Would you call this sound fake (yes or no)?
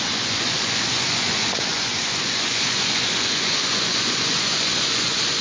yes